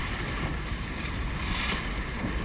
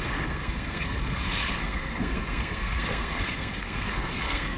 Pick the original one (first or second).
first